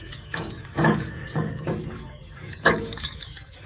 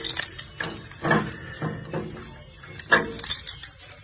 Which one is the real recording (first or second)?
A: second